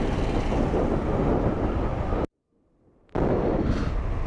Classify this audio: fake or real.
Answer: real